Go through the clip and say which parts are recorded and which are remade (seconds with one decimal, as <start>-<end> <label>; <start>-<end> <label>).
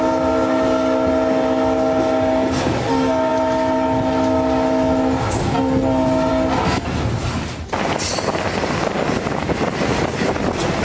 0.0-10.8 recorded